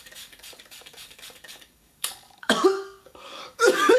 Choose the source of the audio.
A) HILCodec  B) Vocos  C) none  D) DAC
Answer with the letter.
D